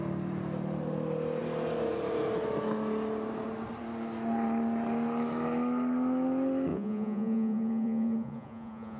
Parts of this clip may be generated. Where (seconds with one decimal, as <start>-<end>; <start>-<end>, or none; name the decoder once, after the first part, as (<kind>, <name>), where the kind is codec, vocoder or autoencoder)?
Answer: 6.7-9.0 (vocoder, Vocos)

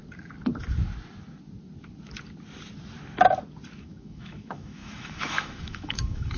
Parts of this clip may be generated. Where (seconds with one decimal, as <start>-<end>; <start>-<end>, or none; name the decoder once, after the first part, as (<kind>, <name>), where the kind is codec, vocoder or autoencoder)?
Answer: 3.8-6.4 (autoencoder, DAC-VAE)

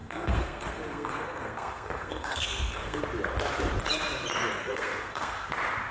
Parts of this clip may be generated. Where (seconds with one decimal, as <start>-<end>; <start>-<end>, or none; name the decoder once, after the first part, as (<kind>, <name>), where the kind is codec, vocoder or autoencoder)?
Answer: 0.0-3.0 (codec, SNAC); 4.6-5.5